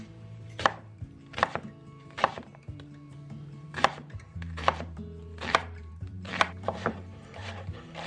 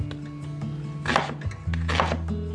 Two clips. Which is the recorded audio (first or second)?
second